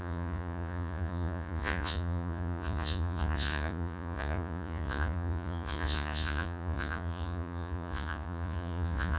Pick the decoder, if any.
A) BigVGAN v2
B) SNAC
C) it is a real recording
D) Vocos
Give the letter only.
D